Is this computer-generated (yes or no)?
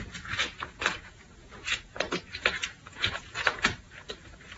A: yes